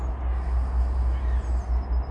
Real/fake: real